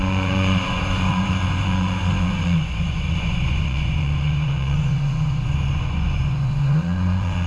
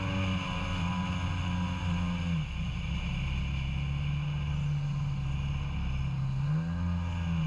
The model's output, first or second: first